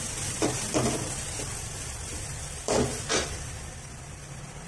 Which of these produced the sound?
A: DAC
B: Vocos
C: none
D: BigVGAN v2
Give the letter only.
D